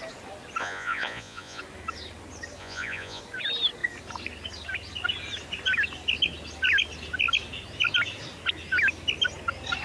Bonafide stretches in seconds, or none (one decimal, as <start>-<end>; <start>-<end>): 0.0-0.6; 1.6-2.6; 3.2-9.8